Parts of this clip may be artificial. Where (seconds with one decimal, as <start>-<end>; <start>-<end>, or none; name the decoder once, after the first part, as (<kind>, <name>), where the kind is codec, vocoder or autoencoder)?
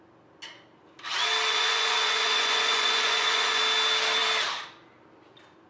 1.5-3.6 (vocoder, Vocos)